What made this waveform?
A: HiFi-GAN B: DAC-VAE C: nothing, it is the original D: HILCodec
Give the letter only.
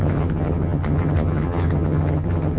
A